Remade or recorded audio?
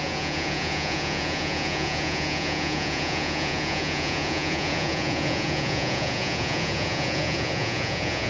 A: remade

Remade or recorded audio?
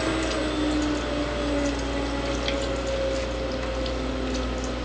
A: recorded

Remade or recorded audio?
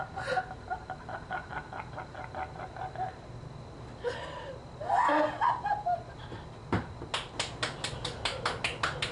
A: recorded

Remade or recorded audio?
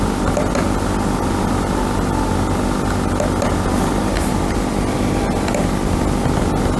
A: recorded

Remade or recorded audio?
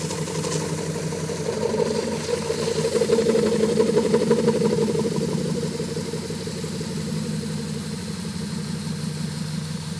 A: recorded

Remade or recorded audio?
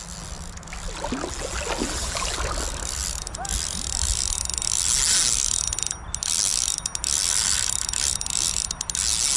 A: recorded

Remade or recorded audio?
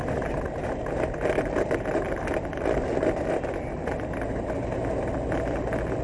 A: recorded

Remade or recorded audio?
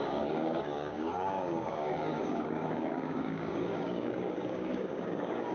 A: remade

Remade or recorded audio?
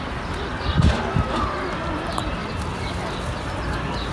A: recorded